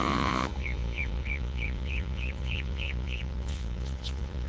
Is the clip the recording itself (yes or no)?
no